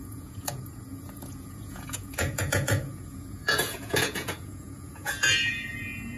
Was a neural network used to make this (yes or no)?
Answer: yes